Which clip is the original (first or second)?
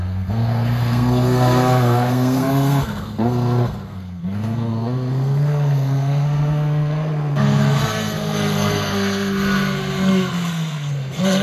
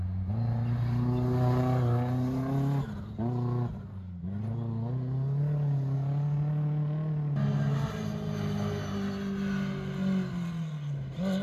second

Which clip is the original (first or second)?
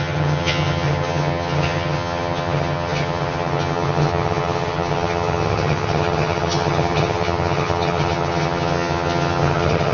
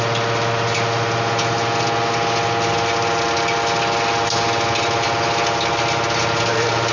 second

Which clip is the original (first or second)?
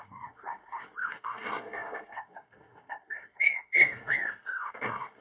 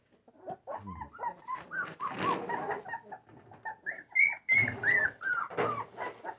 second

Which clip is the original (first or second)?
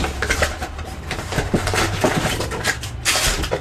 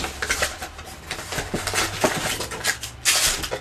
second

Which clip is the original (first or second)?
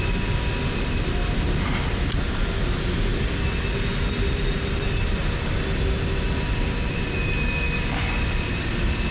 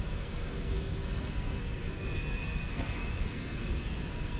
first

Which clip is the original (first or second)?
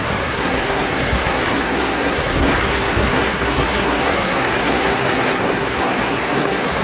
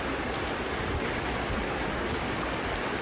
second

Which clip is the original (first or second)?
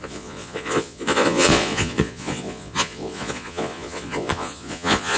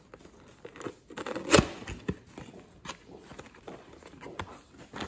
second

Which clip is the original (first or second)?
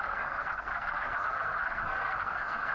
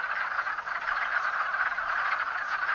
second